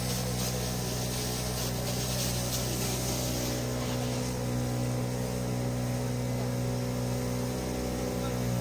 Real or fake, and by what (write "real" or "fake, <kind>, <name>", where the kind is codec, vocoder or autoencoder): real